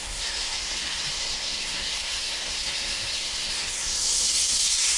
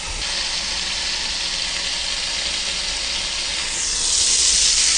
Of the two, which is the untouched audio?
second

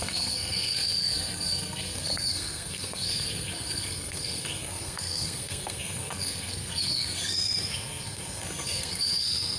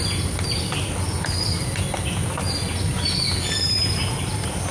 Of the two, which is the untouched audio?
second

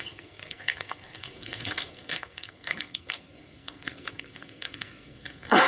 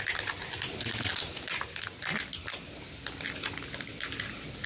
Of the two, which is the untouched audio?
second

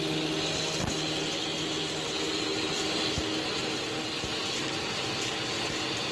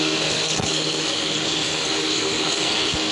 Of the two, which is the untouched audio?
first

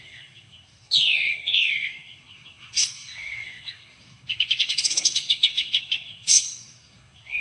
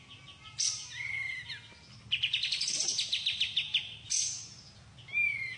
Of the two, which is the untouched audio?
second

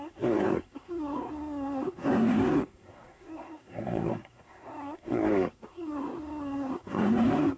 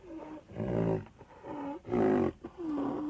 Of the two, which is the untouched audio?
second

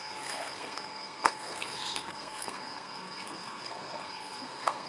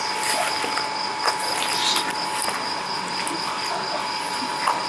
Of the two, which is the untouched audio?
second